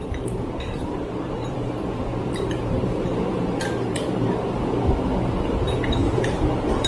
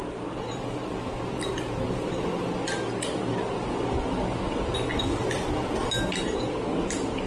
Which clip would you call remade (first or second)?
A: first